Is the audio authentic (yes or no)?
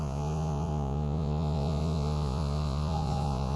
no